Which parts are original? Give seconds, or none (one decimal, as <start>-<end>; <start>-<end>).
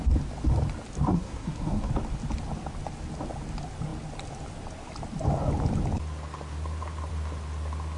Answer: 0.0-1.1; 1.9-8.0